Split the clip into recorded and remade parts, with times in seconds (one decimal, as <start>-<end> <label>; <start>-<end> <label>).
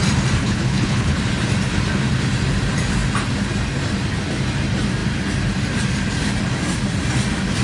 0.0-0.4 recorded; 0.4-1.2 remade; 1.2-7.6 recorded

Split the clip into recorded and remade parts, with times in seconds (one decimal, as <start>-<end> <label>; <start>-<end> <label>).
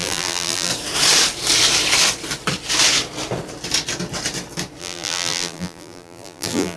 0.0-0.7 remade; 0.7-4.8 recorded; 4.8-6.8 remade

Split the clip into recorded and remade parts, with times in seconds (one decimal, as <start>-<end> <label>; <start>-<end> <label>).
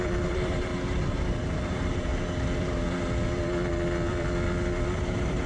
0.0-0.7 remade; 0.7-1.4 recorded; 1.4-2.1 remade; 2.1-5.0 recorded; 5.0-5.5 remade